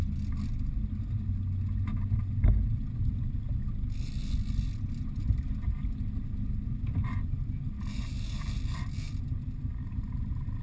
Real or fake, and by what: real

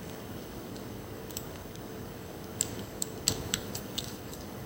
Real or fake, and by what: fake, codec, DAC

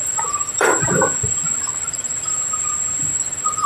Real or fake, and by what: fake, vocoder, BigVGAN v2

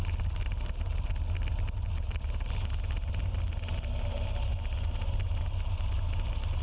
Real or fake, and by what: real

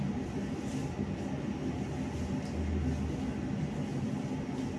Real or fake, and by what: real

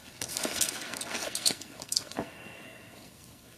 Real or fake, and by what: fake, codec, SNAC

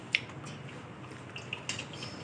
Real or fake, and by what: real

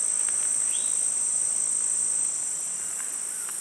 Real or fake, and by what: real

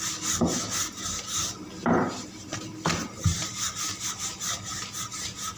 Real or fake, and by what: real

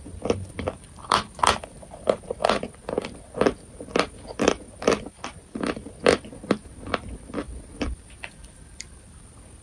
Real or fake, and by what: fake, vocoder, BigVGAN v2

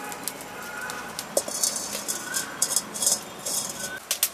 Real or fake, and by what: real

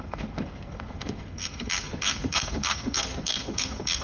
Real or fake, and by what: fake, codec, SNAC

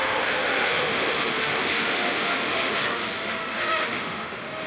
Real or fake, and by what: fake, autoencoder, DAC-VAE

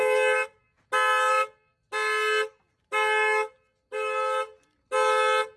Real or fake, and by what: real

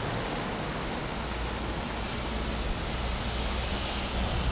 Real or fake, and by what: real